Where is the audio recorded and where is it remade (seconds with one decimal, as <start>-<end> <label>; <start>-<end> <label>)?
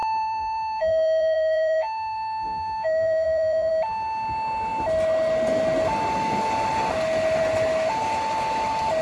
0.0-3.7 remade; 3.7-9.0 recorded